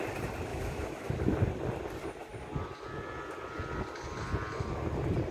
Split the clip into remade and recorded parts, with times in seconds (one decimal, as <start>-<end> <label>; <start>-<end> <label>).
0.0-0.5 recorded; 0.5-1.1 remade; 1.1-5.3 recorded